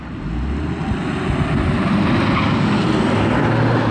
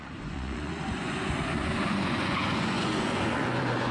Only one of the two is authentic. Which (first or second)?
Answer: first